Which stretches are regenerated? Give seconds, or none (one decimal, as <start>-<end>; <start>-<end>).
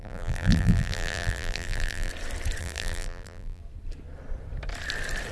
0.0-2.1; 2.6-3.6